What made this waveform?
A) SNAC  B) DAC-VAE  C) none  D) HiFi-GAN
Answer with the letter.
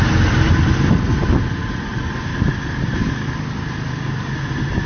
C